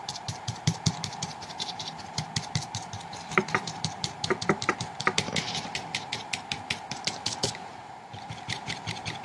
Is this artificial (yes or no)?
yes